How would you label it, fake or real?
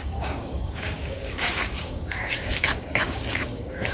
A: fake